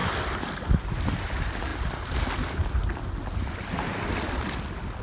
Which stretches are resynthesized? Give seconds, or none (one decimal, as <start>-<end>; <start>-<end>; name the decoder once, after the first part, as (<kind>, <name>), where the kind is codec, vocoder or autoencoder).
0.0-0.9 (vocoder, BigVGAN v2)

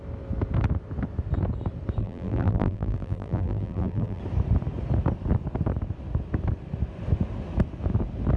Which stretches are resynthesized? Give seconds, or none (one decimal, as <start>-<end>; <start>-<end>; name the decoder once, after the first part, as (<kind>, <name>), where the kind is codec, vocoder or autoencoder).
2.0-4.2 (vocoder, BigVGAN v2)

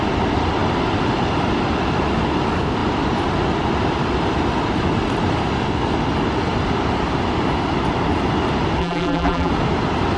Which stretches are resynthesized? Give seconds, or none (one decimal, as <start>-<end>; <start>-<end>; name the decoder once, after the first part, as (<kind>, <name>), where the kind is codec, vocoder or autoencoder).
8.8-9.5 (vocoder, BigVGAN v2)

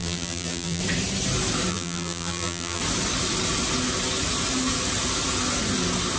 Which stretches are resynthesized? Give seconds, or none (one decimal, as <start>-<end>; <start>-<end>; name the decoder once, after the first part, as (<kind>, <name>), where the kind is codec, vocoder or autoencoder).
0.0-0.8 (vocoder, BigVGAN v2); 1.7-2.8

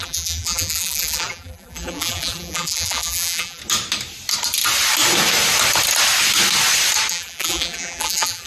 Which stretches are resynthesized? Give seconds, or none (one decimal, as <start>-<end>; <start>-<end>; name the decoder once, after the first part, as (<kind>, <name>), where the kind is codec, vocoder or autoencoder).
0.0-3.6 (vocoder, BigVGAN v2); 7.1-8.5

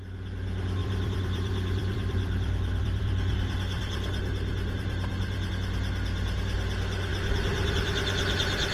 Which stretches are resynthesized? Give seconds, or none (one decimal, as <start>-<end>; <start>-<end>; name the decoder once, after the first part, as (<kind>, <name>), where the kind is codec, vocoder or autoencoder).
0.8-5.5 (vocoder, BigVGAN v2)